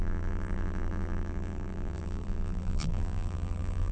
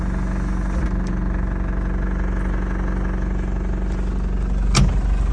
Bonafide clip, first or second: second